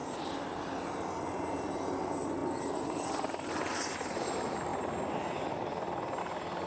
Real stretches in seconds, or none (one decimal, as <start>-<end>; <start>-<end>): 0.0-6.7